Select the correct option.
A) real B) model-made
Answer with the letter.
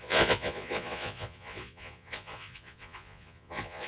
B